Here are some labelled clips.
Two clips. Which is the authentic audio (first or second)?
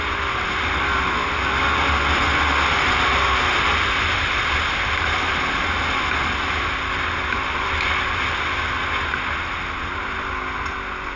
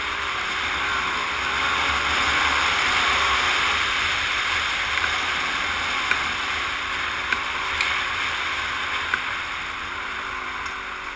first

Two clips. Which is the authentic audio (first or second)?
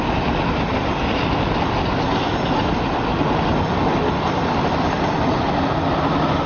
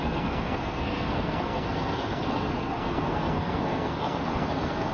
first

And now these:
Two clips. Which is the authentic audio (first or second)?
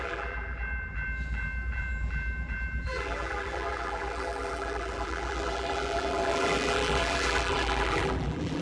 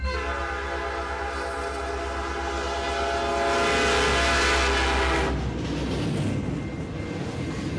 second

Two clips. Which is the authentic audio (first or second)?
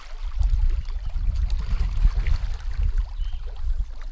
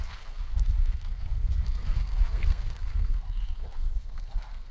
first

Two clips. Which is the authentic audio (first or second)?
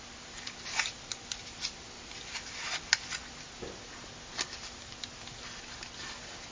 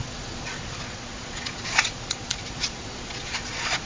first